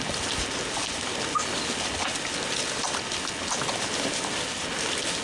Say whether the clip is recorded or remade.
recorded